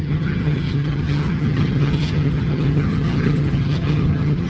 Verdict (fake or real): fake